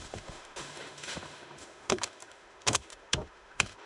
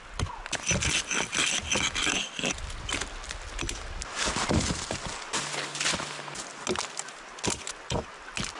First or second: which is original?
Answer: second